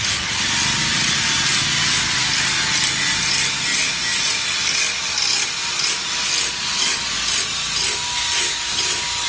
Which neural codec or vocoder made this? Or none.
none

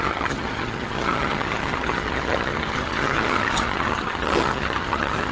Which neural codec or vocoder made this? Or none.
vocoder, HiFi-GAN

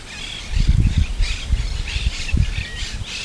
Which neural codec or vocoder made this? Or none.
none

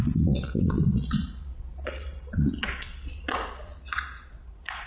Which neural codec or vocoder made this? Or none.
vocoder, Vocos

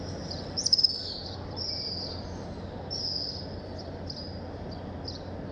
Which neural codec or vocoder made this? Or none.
none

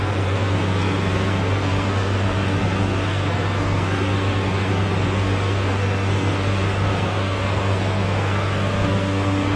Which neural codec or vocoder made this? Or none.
codec, SNAC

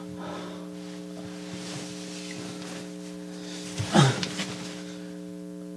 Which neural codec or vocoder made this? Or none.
none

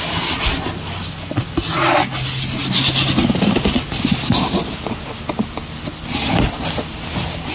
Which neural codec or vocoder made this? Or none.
none